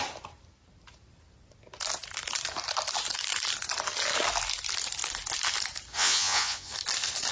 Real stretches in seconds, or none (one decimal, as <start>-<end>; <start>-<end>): 0.0-5.9; 6.7-7.3